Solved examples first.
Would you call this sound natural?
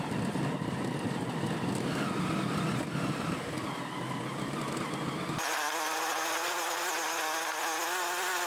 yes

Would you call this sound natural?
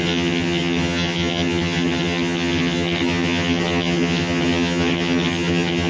no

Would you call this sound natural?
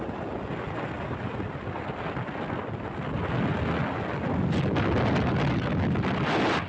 yes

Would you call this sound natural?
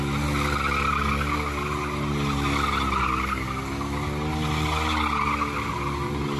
yes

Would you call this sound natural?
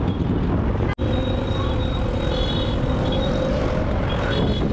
yes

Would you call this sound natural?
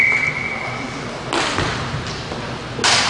yes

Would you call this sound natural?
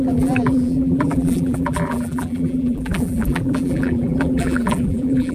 no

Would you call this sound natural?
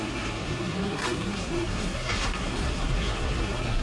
no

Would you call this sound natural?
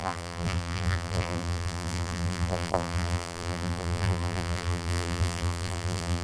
no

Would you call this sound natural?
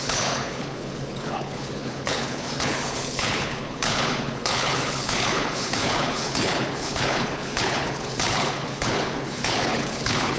no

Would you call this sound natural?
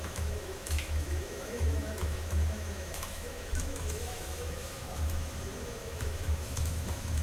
no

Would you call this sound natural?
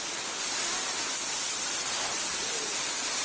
no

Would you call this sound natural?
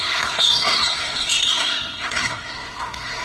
no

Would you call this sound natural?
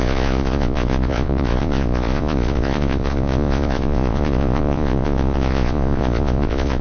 no